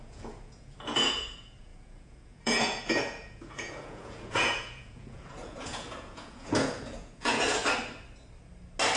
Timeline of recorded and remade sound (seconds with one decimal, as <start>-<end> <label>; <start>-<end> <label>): 0.0-7.6 remade; 7.6-9.0 recorded